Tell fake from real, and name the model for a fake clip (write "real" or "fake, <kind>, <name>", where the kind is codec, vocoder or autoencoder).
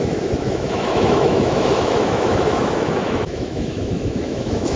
fake, autoencoder, DAC-VAE